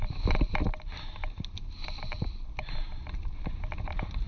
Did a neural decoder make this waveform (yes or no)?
yes